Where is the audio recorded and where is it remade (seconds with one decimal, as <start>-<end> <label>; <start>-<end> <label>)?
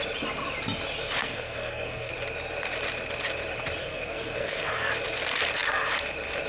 0.0-1.2 recorded; 1.2-2.1 remade; 2.1-3.8 recorded; 3.8-4.9 remade; 4.9-6.5 recorded